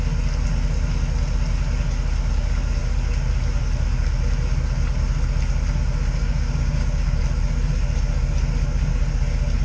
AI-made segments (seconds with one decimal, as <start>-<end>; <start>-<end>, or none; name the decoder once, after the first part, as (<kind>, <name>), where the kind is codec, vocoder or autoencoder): 6.2-7.2 (codec, DAC)

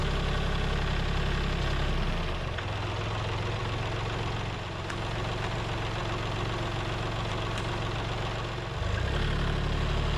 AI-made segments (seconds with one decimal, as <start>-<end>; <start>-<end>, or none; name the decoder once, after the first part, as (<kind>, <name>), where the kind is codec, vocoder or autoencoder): none

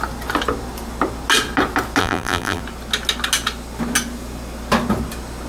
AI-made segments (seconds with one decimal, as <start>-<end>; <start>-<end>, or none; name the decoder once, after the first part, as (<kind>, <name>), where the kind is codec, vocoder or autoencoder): 2.0-2.6 (vocoder, BigVGAN v2)

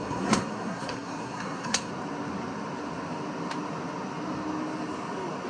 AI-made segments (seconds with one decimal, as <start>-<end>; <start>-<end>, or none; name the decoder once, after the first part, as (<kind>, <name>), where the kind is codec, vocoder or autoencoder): 0.0-1.9 (codec, SNAC)